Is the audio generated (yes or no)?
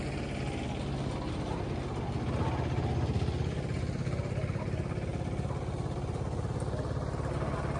no